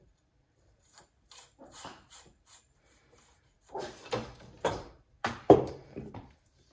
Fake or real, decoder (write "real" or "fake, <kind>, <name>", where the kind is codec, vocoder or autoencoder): fake, vocoder, BigVGAN v2